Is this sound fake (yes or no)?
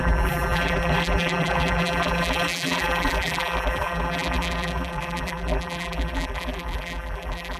yes